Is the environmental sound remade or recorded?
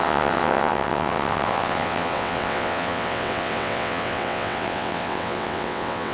remade